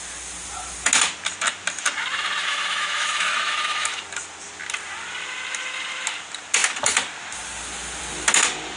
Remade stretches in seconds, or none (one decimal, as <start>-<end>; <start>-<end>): 2.4-4.0